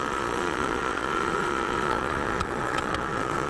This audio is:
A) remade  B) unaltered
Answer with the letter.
A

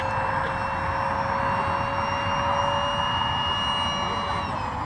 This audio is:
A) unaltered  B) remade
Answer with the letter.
A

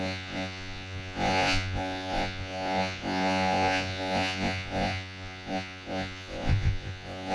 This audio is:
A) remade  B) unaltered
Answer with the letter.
A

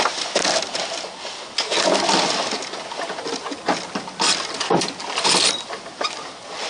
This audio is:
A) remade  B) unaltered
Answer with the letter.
B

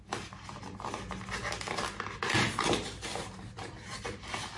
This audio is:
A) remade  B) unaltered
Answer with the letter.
B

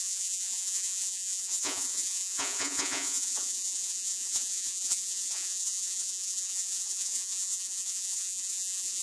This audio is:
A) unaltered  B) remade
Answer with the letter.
B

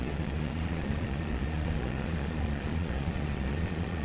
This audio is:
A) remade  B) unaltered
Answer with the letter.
A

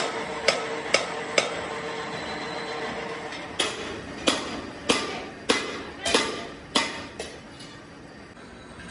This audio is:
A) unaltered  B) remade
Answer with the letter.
A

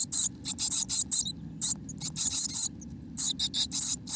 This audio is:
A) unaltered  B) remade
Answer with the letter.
A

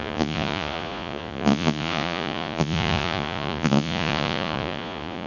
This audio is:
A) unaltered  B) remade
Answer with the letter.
B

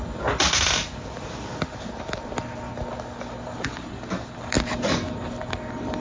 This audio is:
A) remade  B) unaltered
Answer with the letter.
B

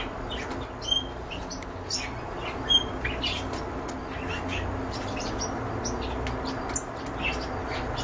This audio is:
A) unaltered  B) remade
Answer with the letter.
A